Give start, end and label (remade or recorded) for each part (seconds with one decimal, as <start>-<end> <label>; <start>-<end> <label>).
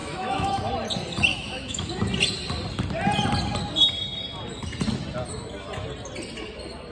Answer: 0.0-0.7 remade; 0.7-1.3 recorded; 1.3-2.0 remade; 2.0-6.9 recorded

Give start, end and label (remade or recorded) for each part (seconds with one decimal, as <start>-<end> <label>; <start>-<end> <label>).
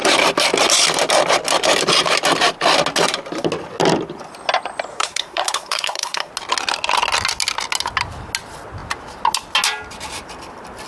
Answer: 0.0-4.9 recorded; 4.9-6.3 remade; 6.3-10.9 recorded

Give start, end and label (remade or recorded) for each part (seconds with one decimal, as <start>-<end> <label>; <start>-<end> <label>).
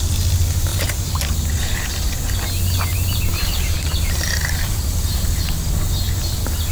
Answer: 0.0-0.7 recorded; 0.7-1.8 remade; 1.8-2.9 recorded; 2.9-5.4 remade; 5.4-6.7 recorded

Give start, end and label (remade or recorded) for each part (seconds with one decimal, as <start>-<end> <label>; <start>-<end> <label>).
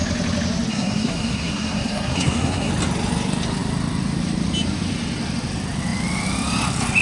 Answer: 0.0-0.7 recorded; 0.7-2.7 remade; 2.7-7.0 recorded